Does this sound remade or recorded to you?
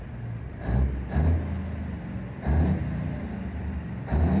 recorded